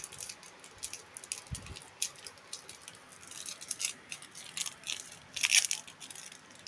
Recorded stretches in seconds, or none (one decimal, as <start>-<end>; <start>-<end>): 0.0-6.7